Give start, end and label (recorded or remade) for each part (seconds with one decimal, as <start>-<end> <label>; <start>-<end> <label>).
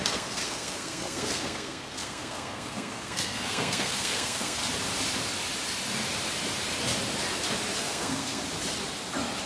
0.0-4.6 remade; 4.6-7.8 recorded; 7.8-8.4 remade; 8.4-9.5 recorded